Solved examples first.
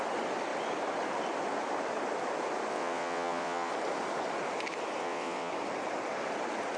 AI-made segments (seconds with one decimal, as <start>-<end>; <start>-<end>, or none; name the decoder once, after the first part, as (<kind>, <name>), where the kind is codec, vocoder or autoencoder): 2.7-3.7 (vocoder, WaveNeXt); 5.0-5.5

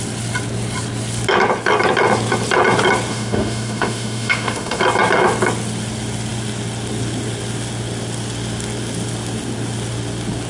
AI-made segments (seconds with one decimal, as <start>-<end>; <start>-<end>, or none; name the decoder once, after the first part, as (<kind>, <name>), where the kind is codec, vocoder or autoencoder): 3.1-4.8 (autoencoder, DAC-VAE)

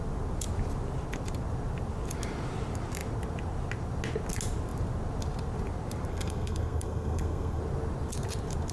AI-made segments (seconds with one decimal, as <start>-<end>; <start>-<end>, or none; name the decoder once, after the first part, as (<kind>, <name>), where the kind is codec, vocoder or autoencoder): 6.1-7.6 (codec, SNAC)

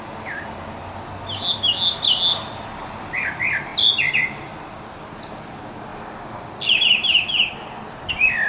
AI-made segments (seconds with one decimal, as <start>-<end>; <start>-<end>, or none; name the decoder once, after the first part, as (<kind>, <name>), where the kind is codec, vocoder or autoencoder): none

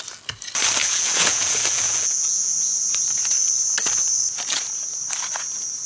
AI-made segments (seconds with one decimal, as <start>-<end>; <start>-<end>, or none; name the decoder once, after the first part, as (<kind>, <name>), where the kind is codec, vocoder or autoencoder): 0.8-2.5 (vocoder, Vocos)

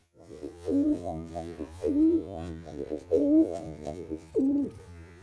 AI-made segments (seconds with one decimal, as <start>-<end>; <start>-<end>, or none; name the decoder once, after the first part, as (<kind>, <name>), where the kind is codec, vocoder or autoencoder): 0.0-4.3 (vocoder, Vocos); 4.8-5.2

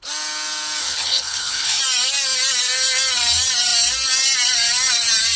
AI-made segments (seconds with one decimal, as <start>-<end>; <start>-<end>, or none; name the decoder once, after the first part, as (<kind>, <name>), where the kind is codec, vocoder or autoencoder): 0.8-1.8 (codec, HILCodec)